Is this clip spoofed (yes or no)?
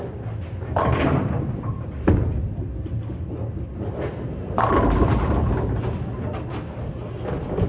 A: no